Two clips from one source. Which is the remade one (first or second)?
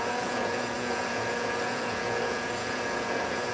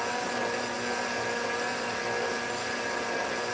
first